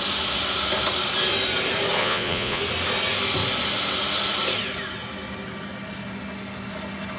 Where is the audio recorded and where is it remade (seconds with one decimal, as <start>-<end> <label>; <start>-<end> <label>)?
0.0-2.0 recorded; 2.0-2.6 remade; 2.6-7.2 recorded